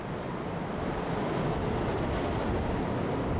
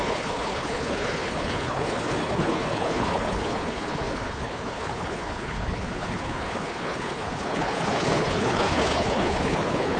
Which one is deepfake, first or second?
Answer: second